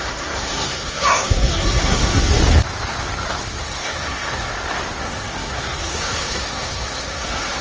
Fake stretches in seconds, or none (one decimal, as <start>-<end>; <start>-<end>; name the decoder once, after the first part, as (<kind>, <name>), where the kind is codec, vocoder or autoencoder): 0.0-2.4 (codec, SNAC); 3.6-4.5; 5.0-7.6